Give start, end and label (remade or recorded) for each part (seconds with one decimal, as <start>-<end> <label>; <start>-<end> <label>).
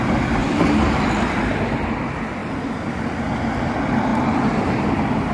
0.0-0.4 recorded; 0.4-1.5 remade; 1.5-2.4 recorded; 2.4-3.2 remade; 3.2-5.3 recorded